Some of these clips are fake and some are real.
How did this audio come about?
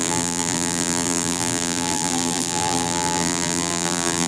fake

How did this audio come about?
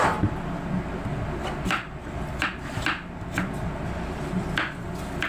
real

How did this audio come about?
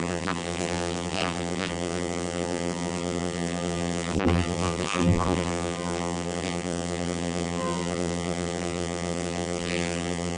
fake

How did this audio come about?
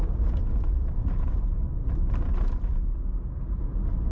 real